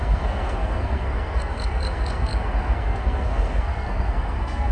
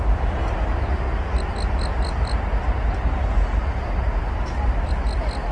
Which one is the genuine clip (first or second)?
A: second